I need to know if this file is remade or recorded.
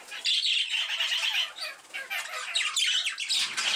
recorded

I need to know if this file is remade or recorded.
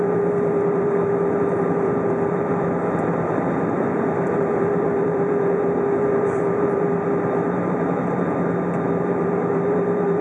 remade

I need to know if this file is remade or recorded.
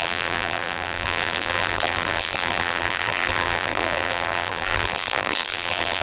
remade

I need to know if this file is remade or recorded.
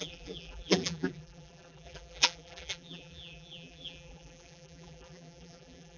remade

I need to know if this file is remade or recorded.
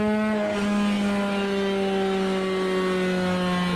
recorded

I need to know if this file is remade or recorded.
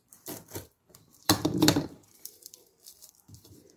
remade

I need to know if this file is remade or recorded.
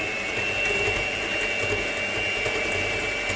recorded